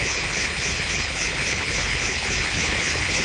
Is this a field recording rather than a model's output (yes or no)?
no